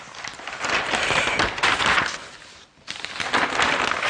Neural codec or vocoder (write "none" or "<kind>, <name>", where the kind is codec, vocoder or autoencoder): none